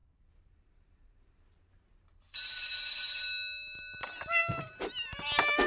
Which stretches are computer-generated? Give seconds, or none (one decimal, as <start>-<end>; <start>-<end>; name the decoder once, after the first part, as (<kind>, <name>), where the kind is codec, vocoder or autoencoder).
0.0-3.2 (vocoder, BigVGAN v2)